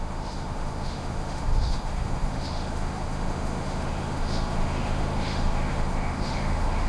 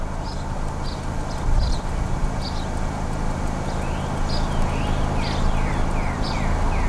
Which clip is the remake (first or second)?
first